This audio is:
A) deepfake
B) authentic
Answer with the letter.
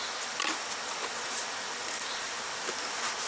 B